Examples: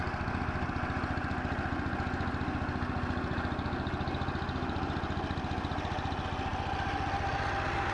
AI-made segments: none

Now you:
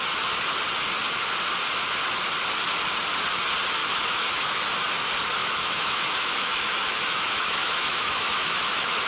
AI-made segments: 3.8-4.6 (autoencoder, DAC-VAE); 5.4-9.1